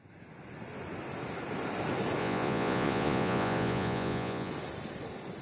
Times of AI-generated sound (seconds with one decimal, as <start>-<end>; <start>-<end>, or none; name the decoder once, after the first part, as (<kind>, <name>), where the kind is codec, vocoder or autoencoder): 2.2-4.5 (vocoder, Vocos)